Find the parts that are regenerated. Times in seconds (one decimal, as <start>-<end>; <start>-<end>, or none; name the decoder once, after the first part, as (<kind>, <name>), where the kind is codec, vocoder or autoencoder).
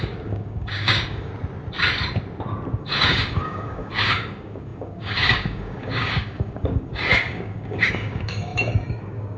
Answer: 0.0-1.3 (codec, DAC); 2.8-9.4